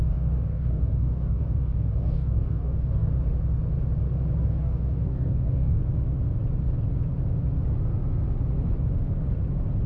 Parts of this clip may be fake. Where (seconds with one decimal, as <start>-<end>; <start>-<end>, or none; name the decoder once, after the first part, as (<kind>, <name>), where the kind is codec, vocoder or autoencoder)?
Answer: 0.0-3.1 (codec, DAC); 4.4-5.8